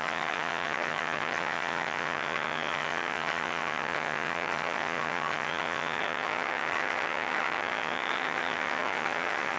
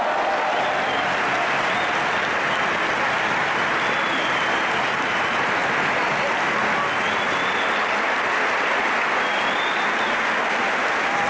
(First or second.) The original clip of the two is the second